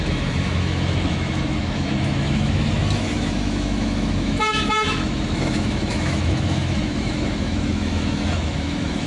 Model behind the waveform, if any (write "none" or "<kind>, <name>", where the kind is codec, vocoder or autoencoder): autoencoder, DAC-VAE